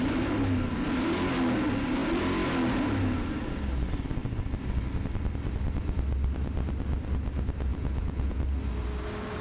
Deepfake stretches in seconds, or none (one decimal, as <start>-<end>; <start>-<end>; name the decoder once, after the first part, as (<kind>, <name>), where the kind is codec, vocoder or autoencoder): 7.7-8.4 (vocoder, Vocos)

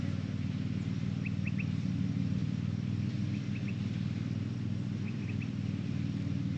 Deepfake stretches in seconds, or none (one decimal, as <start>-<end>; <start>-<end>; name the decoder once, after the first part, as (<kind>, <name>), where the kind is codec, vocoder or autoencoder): none

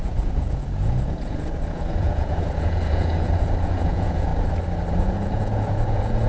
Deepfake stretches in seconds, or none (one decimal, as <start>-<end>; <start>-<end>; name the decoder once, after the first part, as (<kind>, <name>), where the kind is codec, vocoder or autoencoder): 0.0-4.3 (vocoder, Vocos); 4.9-6.3

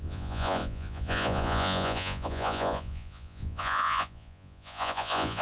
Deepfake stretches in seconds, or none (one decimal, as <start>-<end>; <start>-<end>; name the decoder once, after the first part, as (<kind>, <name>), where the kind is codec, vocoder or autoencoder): 0.0-5.4 (vocoder, Vocos)

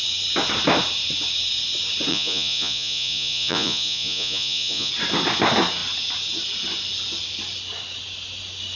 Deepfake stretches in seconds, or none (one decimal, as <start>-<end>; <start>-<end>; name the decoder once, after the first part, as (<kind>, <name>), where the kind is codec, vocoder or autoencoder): 2.1-4.9 (vocoder, Vocos)

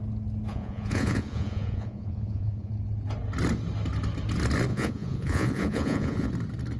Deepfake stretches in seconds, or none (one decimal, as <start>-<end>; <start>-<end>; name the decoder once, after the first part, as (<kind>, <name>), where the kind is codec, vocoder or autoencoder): 0.5-2.7 (vocoder, Vocos); 4.7-6.3

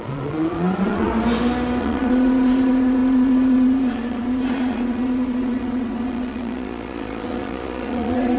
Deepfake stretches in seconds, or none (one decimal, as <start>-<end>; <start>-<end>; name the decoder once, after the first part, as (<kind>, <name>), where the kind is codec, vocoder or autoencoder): 0.0-1.1 (vocoder, Vocos); 1.8-8.4